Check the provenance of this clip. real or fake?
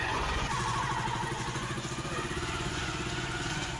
fake